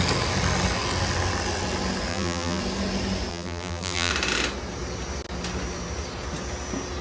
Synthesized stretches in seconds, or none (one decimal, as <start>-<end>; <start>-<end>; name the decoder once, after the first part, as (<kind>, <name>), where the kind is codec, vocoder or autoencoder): 2.1-2.6 (vocoder, BigVGAN v2); 3.3-4.1